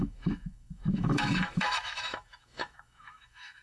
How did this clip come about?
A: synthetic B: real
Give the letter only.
A